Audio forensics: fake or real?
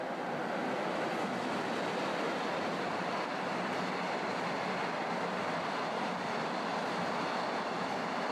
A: real